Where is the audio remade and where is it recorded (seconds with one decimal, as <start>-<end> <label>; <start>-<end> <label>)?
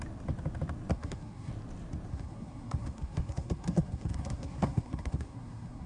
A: 0.0-0.9 recorded; 0.9-1.5 remade; 1.5-2.1 recorded; 2.1-5.9 remade